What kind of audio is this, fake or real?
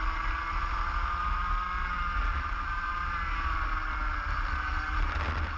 real